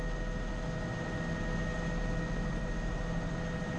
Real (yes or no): yes